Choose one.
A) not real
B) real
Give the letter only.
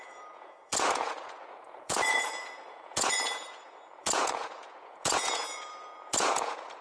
A